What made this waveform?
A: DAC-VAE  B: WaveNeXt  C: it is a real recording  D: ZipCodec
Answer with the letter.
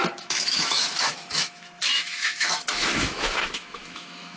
A